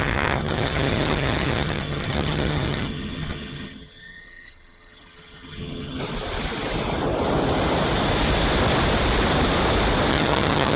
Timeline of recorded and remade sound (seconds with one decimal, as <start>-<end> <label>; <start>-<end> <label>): 0.0-6.0 remade; 6.0-10.1 recorded; 10.1-10.8 remade